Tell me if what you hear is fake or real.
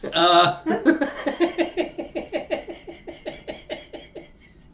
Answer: fake